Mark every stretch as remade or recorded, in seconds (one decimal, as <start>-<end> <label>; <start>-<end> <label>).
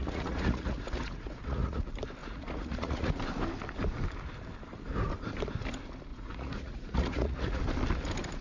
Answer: 0.0-1.8 remade; 1.8-2.2 recorded; 2.2-3.1 remade; 3.1-6.1 recorded; 6.1-7.6 remade; 7.6-8.4 recorded